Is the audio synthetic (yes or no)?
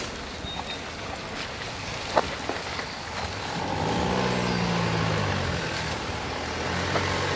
no